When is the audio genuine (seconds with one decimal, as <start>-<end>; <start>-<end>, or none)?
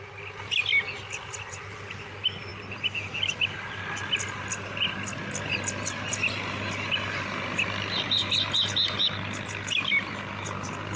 0.0-11.0